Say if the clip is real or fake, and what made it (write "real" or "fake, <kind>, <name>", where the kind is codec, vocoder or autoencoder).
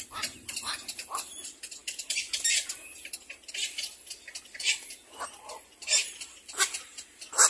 real